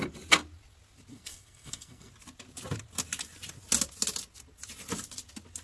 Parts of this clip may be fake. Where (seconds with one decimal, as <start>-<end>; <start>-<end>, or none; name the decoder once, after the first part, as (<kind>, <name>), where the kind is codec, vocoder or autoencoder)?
1.1-2.1 (codec, SNAC)